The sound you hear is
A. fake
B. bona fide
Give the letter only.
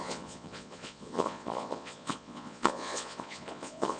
A